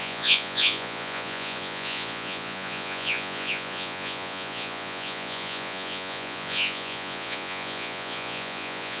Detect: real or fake fake